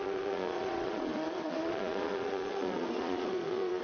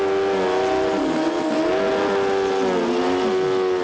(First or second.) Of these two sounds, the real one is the second